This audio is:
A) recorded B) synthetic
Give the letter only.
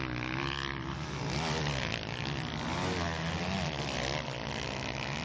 A